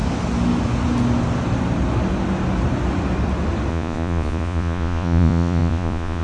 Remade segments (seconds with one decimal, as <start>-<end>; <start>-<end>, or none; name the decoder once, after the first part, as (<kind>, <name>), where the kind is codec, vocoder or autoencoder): 3.7-6.2 (vocoder, Vocos)